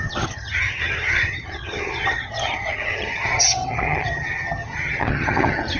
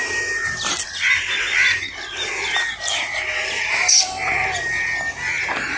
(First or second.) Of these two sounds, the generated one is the first